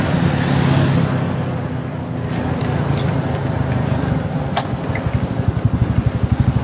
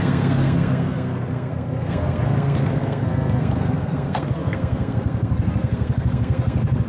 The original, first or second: first